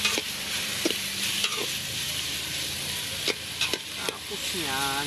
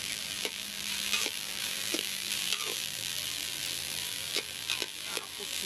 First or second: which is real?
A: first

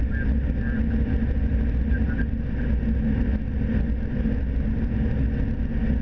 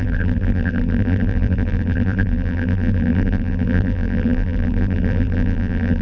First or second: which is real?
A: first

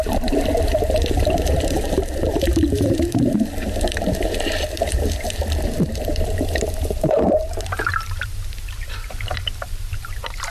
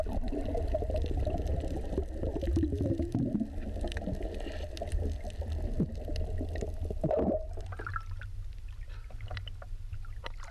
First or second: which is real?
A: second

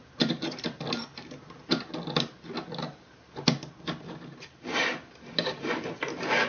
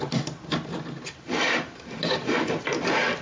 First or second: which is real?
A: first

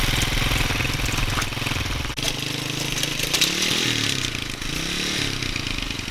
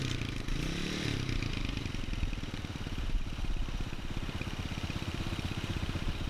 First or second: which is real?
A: first